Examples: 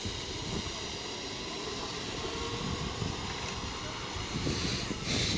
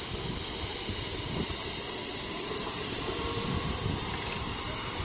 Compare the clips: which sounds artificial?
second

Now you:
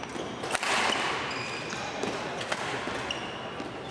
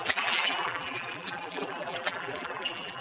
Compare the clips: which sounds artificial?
second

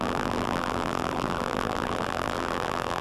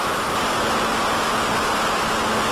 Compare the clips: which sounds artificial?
first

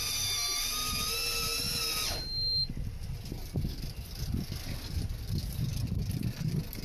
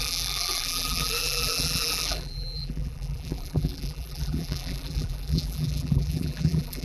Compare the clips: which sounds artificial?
second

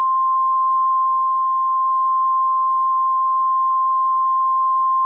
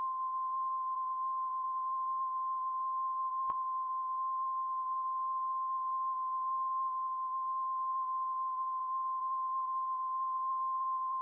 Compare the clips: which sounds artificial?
second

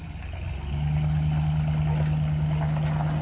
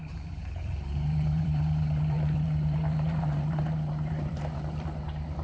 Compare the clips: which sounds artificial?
second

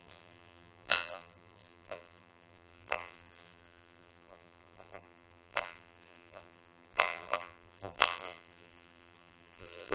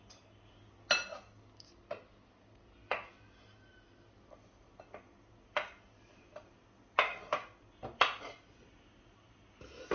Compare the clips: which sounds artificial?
first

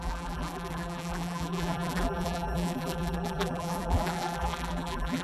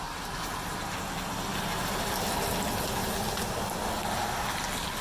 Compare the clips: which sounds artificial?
first